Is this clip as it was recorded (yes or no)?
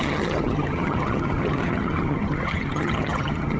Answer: no